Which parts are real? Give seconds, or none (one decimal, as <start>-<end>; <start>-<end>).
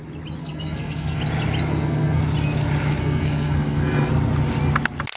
0.0-0.4; 1.2-1.7; 2.2-3.0; 4.1-5.2